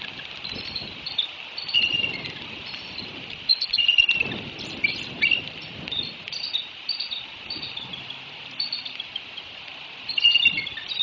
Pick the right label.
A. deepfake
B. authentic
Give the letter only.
B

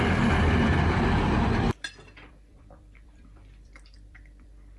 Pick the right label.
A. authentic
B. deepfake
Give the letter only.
B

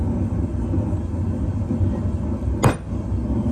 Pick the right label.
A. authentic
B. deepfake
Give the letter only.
A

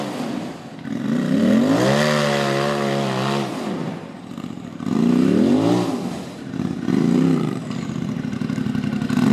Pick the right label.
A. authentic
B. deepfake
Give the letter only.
A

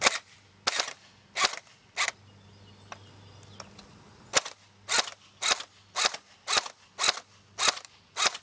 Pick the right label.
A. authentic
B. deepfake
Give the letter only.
A